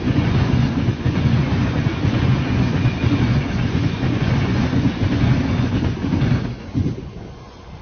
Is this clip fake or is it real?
fake